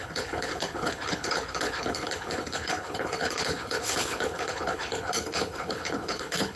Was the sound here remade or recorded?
remade